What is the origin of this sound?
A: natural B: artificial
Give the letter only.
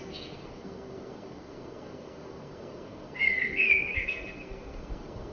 B